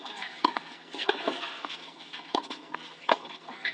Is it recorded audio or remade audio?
remade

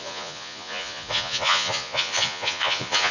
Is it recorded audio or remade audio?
remade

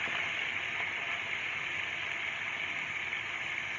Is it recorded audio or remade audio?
recorded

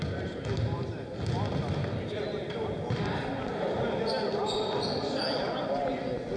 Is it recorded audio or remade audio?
recorded